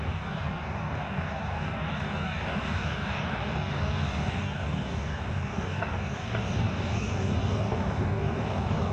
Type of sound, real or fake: fake